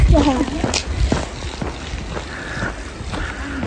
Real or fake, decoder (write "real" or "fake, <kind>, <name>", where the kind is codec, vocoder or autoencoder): real